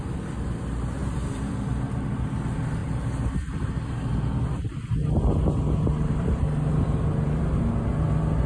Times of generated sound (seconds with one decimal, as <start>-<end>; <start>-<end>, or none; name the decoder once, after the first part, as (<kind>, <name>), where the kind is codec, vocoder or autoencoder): 1.0-2.2 (vocoder, BigVGAN v2); 2.8-5.3; 6.7-7.6